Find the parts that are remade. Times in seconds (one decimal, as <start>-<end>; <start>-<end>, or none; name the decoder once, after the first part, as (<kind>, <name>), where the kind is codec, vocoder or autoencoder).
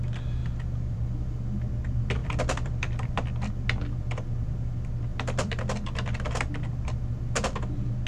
0.4-1.6 (vocoder, BigVGAN v2); 2.2-3.5; 5.1-5.6